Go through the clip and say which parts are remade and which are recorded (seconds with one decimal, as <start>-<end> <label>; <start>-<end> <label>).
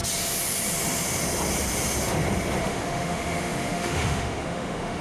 0.0-2.6 recorded; 2.6-5.0 remade